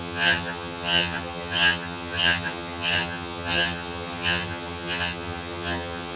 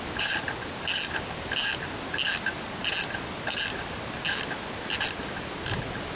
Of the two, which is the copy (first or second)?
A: first